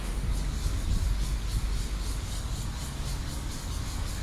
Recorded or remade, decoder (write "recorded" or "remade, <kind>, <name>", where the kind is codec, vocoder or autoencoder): remade, codec, DAC